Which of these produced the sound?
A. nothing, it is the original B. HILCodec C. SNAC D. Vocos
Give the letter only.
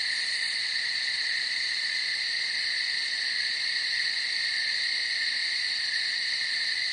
A